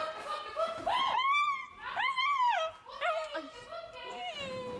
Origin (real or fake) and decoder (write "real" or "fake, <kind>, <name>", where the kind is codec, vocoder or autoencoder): real